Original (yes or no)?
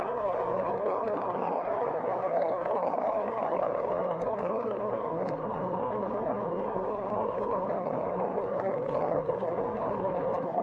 no